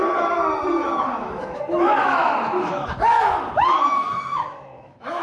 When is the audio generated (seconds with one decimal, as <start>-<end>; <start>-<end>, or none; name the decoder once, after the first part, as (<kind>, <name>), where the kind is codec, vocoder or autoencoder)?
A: 1.2-5.2 (autoencoder, DAC-VAE)